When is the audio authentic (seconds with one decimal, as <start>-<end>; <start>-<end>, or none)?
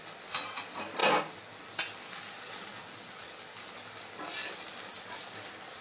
0.0-5.8